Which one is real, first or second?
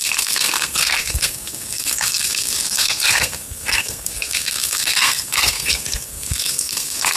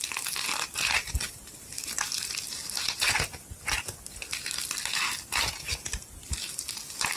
second